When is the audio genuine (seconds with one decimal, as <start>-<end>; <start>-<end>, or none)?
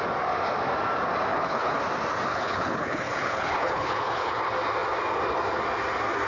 0.0-1.3; 1.8-2.3; 4.3-6.3